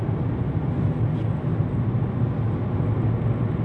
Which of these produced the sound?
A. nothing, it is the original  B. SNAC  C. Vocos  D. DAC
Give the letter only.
A